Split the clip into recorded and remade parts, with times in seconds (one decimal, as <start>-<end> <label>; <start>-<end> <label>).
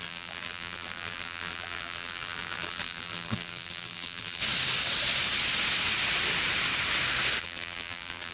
0.0-4.4 remade; 4.4-7.4 recorded; 7.4-8.3 remade